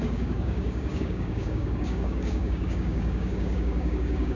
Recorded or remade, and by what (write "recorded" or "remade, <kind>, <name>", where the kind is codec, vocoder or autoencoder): remade, codec, DAC